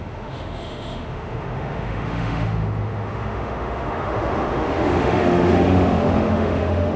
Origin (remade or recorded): remade